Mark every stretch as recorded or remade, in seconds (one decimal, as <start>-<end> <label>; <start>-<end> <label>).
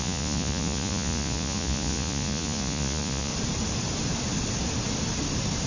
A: 0.0-3.3 remade; 3.3-5.7 recorded